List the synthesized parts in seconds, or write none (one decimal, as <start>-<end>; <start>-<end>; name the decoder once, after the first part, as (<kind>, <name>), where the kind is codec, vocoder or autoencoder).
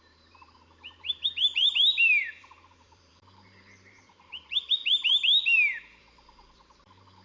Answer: 0.0-4.8 (vocoder, BigVGAN v2); 6.0-7.2